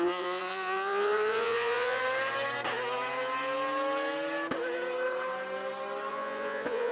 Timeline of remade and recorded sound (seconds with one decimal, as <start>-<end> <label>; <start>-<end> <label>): 0.0-2.0 remade; 2.0-6.1 recorded; 6.1-6.9 remade